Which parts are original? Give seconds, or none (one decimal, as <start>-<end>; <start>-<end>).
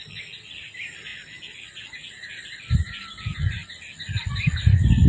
0.0-5.1